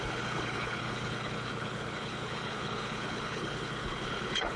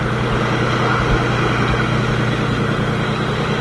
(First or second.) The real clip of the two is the second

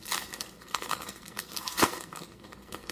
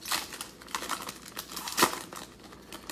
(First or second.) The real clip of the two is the second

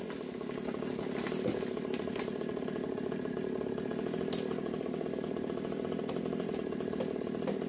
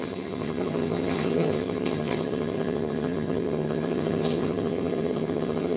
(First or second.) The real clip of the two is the first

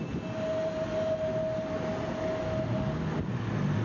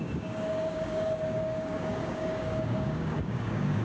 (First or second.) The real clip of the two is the first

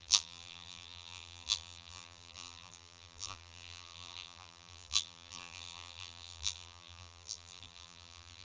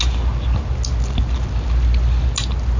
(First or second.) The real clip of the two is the second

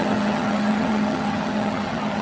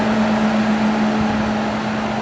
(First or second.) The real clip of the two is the second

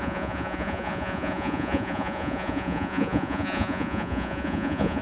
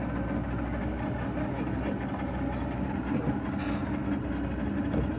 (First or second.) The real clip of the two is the second